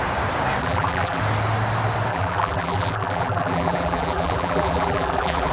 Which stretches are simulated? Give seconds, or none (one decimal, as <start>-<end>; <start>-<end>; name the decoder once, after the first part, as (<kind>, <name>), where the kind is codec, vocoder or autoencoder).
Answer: 0.6-1.2 (vocoder, BigVGAN v2); 2.1-5.5